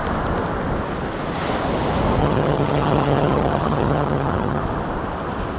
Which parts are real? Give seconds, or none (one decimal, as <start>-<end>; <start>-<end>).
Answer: 0.0-2.2; 4.6-5.6